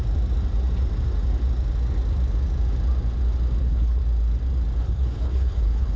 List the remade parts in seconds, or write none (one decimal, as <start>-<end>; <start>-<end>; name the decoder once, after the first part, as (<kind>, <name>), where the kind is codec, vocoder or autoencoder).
3.6-4.0 (codec, HILCodec); 4.8-6.0